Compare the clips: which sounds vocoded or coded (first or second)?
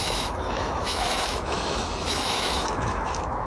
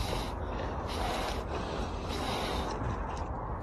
first